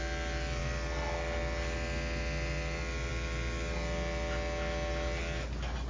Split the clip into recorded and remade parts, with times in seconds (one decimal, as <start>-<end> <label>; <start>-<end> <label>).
0.0-5.9 recorded